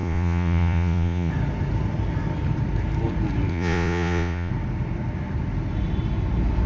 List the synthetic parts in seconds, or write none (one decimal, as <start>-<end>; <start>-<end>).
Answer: 0.0-1.3; 3.5-4.5